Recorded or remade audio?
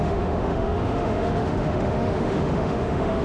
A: remade